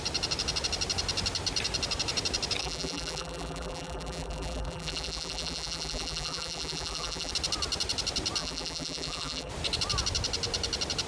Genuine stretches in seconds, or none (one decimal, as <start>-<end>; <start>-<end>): 0.0-2.6; 7.3-8.4; 9.5-11.1